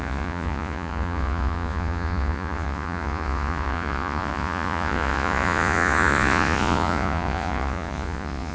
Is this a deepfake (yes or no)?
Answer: yes